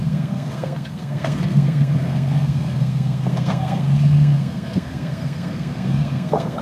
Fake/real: fake